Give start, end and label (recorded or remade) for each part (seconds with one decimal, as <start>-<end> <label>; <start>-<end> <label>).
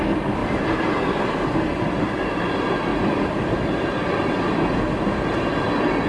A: 0.0-0.4 recorded; 0.4-2.0 remade; 2.0-2.9 recorded; 2.9-4.3 remade; 4.3-6.1 recorded